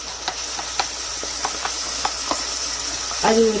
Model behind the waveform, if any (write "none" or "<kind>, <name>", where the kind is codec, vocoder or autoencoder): none